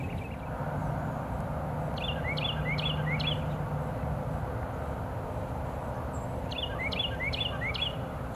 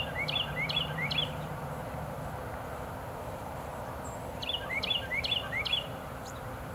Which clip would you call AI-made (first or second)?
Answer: second